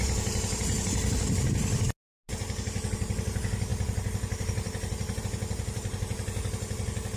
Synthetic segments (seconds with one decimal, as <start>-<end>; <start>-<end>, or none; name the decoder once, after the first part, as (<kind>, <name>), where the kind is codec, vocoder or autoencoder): none